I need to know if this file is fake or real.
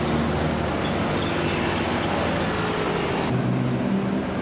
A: real